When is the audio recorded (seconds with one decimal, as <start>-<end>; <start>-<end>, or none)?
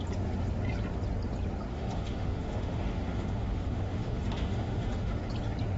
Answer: 0.0-1.7; 5.2-5.8